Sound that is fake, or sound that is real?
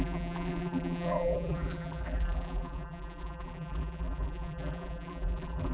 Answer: fake